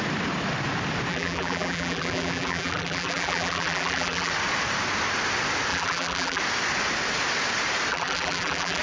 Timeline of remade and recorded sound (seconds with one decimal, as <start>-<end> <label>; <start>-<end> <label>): 0.0-1.1 recorded; 1.1-4.3 remade; 4.3-5.7 recorded; 5.7-6.4 remade; 6.4-7.9 recorded; 7.9-8.8 remade